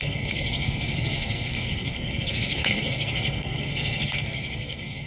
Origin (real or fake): fake